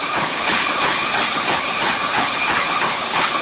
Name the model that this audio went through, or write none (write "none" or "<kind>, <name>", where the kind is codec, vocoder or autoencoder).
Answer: codec, HILCodec